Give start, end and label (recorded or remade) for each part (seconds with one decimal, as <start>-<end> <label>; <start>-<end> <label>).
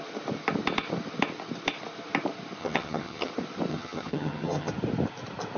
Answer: 0.0-2.6 recorded; 2.6-3.3 remade; 3.3-3.7 recorded; 3.7-4.7 remade; 4.7-5.6 recorded